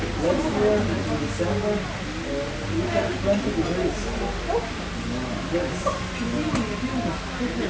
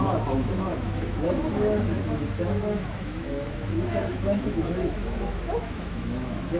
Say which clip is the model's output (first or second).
second